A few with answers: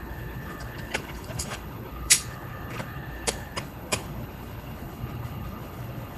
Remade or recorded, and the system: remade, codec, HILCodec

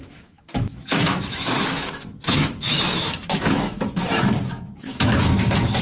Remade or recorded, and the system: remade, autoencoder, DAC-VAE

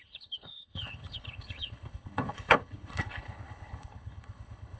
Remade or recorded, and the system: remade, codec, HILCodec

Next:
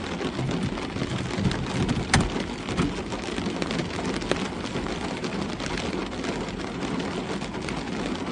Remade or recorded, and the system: recorded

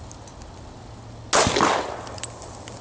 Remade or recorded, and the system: recorded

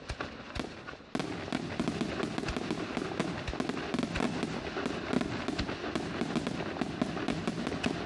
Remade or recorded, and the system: recorded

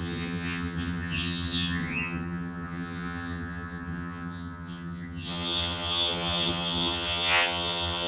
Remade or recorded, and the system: remade, vocoder, HiFi-GAN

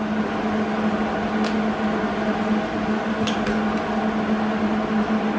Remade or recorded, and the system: recorded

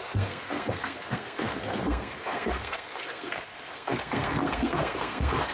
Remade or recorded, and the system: remade, codec, SNAC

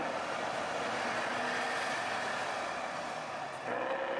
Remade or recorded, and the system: recorded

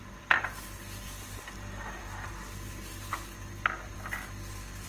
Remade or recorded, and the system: recorded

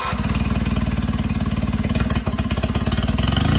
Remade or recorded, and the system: recorded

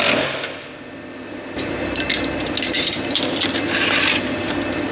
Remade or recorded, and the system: recorded